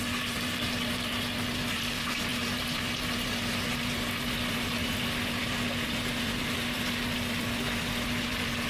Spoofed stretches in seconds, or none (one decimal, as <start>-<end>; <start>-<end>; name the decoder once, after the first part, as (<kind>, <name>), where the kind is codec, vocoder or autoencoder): none

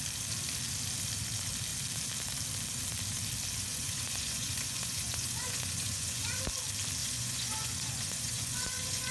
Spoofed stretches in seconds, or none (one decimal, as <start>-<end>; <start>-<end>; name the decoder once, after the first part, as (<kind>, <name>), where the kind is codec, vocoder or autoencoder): 3.7-6.4 (vocoder, Vocos); 7.0-9.1